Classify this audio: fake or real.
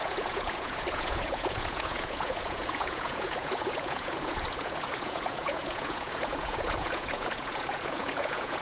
fake